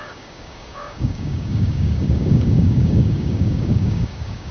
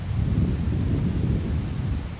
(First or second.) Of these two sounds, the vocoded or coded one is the first